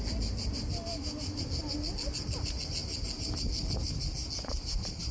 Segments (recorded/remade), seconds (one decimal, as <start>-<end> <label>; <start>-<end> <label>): 0.0-0.9 recorded; 0.9-1.4 remade; 1.4-5.1 recorded